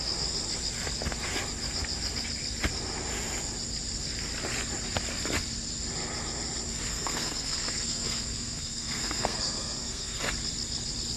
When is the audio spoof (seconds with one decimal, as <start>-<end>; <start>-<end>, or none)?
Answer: 6.9-10.2